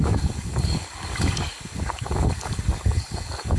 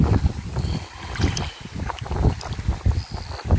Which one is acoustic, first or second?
second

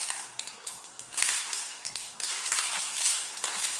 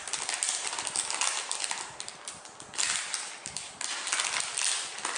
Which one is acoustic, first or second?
second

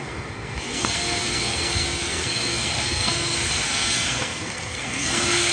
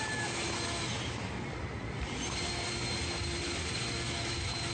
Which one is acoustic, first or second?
second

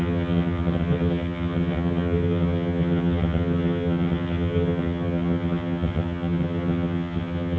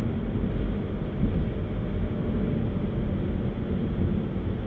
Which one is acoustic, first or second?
second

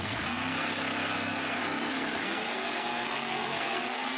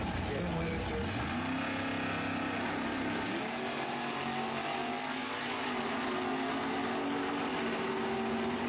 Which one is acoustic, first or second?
second